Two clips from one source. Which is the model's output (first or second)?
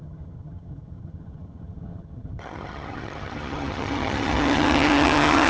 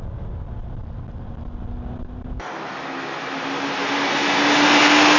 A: first